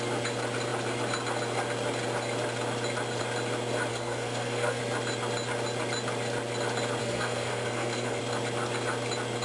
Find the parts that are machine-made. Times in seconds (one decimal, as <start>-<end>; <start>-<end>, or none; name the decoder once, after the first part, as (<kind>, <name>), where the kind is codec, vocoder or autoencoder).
3.9-4.8 (codec, SNAC); 7.0-8.2